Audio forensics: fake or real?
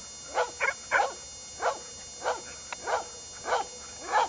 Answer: real